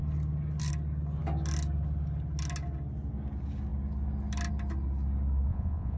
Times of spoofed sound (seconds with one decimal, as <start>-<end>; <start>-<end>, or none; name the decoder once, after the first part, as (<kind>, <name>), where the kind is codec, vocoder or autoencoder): 5.5-6.0 (vocoder, Vocos)